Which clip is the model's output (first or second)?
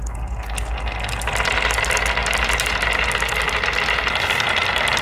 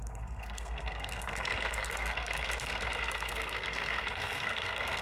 second